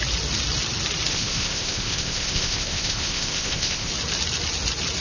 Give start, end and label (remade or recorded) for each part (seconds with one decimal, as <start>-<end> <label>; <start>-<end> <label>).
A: 0.0-1.1 recorded; 1.1-3.9 remade; 3.9-5.0 recorded